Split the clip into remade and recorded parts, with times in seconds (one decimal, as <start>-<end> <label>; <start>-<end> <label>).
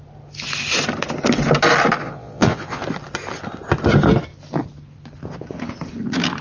0.0-2.0 recorded; 2.0-2.8 remade; 2.8-6.4 recorded